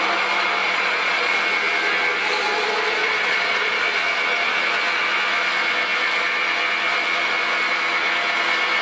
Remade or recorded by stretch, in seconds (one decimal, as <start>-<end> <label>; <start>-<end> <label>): 0.0-0.6 recorded; 0.6-1.3 remade; 1.3-3.0 recorded; 3.0-3.8 remade; 3.8-8.8 recorded